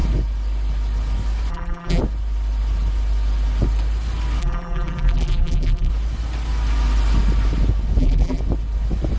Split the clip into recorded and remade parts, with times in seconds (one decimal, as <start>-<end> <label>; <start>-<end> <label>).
0.0-1.5 recorded; 1.5-2.0 remade; 2.0-4.4 recorded; 4.4-5.9 remade; 5.9-8.0 recorded; 8.0-8.4 remade; 8.4-9.2 recorded